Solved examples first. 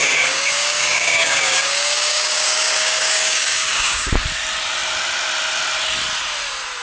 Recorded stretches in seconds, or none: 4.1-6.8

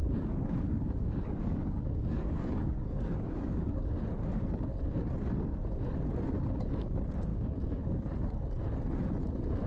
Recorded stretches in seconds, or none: 3.9-7.3; 8.0-9.7

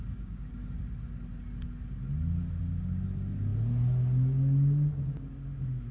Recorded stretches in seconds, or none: 0.6-5.9

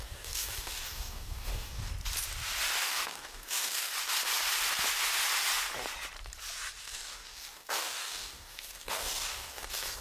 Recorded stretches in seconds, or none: 1.9-2.8; 3.9-6.8

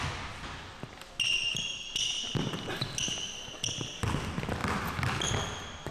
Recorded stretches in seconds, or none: 0.0-5.9

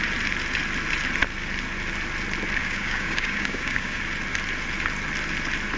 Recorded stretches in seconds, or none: 0.0-2.6; 4.0-5.8